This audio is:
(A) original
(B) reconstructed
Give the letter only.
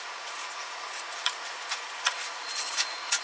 B